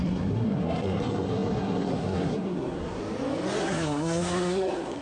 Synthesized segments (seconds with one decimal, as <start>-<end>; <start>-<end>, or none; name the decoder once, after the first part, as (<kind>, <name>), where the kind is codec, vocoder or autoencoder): 0.0-3.0 (codec, SNAC); 3.6-5.0